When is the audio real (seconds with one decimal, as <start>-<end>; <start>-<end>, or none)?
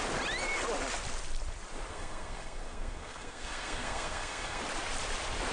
0.0-1.9; 4.6-5.5